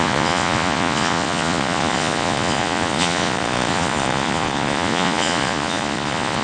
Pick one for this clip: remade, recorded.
remade